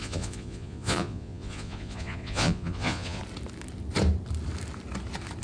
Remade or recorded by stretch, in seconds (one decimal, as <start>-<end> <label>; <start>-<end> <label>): 0.0-3.2 remade; 3.2-5.4 recorded